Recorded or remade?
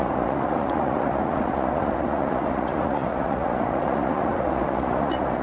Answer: remade